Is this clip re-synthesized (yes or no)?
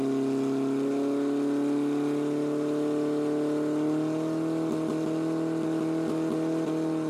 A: no